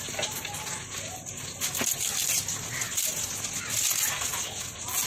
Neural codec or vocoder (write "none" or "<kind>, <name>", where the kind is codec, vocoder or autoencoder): none